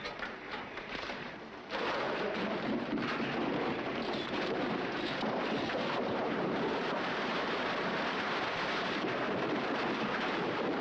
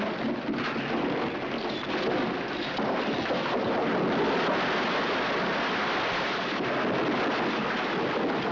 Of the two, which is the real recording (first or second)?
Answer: second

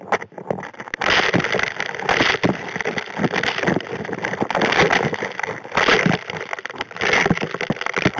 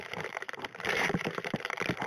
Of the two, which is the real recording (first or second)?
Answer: first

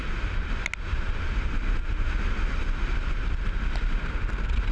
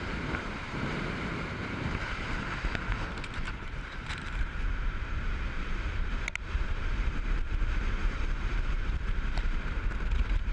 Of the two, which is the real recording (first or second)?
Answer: first